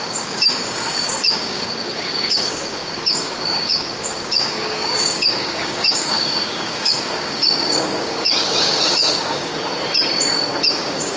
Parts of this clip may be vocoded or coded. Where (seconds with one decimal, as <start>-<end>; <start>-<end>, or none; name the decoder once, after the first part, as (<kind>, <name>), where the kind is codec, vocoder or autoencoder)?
0.0-9.5 (codec, DAC); 10.7-11.2